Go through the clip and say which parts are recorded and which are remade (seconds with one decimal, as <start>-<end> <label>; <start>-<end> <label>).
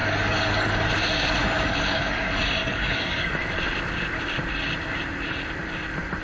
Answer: 0.0-0.9 remade; 0.9-1.4 recorded; 1.4-3.3 remade; 3.3-6.2 recorded